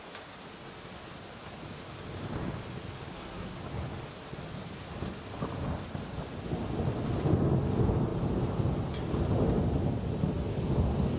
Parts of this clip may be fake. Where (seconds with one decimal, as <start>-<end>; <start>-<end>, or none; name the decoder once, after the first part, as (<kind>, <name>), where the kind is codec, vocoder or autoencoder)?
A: 3.1-3.6 (codec, SNAC)